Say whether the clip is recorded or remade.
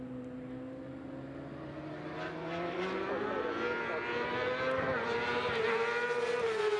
recorded